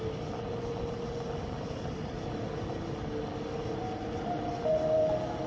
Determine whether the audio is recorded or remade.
recorded